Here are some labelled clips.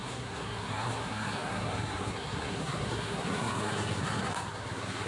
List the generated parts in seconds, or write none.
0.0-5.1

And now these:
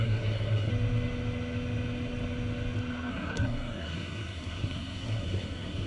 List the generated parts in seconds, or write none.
0.0-0.7; 3.1-5.9

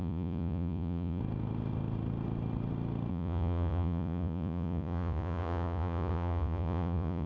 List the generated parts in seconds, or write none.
0.0-1.2; 3.1-7.3

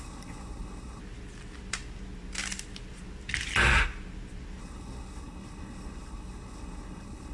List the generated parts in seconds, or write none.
0.0-1.0; 4.6-7.3

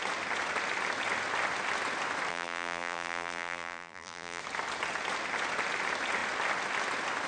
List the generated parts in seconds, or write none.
2.3-4.4